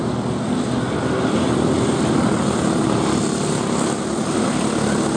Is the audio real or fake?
real